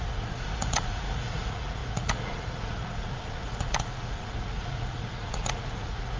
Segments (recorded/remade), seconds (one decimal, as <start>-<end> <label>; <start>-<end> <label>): 0.0-6.2 remade